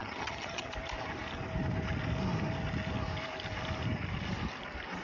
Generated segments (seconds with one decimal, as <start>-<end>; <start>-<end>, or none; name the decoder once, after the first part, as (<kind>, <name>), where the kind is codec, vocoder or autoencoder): 0.0-0.7 (vocoder, HiFi-GAN)

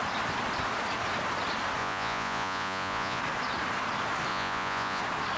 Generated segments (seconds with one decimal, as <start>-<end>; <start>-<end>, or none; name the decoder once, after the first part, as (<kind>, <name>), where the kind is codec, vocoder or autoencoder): 1.8-3.2 (vocoder, Vocos); 4.3-5.0

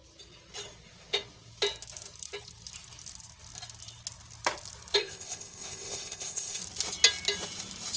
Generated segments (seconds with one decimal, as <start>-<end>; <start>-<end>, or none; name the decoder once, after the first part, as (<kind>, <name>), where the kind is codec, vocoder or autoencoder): 5.0-6.6 (codec, ZipCodec)